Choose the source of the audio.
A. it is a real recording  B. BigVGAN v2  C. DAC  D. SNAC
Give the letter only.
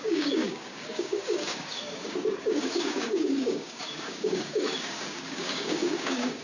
C